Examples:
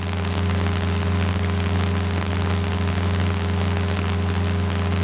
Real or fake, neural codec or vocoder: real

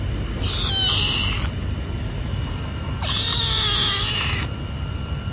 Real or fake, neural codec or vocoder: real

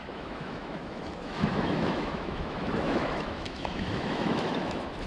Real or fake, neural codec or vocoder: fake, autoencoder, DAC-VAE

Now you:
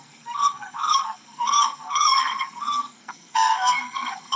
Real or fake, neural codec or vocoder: fake, codec, SNAC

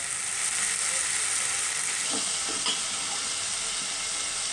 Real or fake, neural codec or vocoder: real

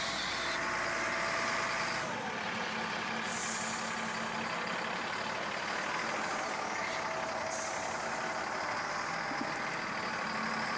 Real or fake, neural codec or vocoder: real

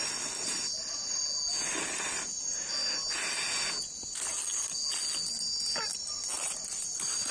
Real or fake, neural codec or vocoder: real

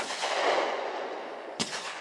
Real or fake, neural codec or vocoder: fake, vocoder, Vocos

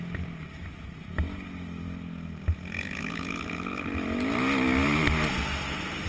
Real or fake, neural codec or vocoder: real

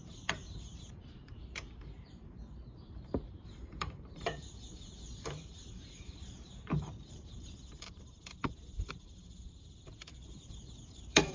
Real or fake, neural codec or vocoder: fake, vocoder, BigVGAN v2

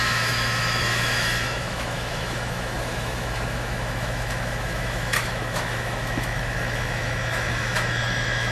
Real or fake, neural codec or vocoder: fake, autoencoder, DAC-VAE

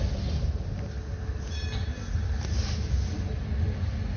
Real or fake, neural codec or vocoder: real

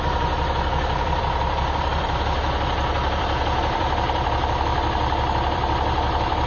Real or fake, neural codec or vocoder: fake, vocoder, BigVGAN v2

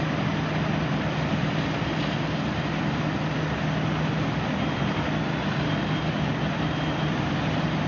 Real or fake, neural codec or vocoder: real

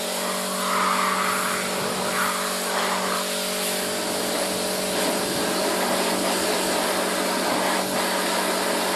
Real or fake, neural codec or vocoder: real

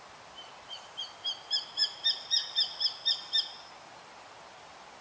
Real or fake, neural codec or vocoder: fake, vocoder, BigVGAN v2